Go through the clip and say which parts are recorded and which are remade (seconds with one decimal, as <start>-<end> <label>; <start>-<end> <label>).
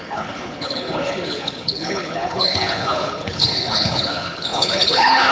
0.0-5.3 remade